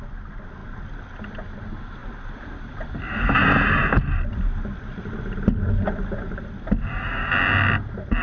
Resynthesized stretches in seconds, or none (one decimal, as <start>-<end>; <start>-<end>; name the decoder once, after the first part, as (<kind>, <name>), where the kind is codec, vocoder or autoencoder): 2.0-6.9 (vocoder, BigVGAN v2)